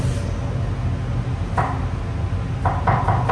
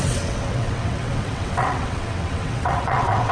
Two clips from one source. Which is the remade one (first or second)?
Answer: second